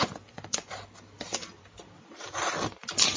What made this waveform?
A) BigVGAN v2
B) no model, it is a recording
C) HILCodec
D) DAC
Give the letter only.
A